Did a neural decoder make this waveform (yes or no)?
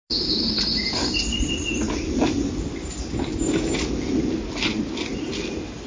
no